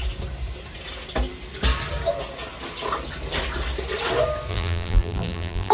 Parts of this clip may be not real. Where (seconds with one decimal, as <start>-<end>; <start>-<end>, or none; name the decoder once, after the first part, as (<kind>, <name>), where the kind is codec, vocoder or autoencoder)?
4.5-5.7 (vocoder, BigVGAN v2)